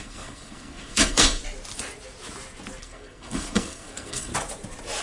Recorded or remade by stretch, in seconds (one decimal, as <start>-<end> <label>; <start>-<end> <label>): 0.0-1.4 remade; 1.4-2.8 recorded; 2.8-4.3 remade; 4.3-5.0 recorded